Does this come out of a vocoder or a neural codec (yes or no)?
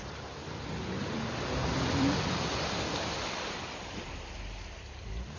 yes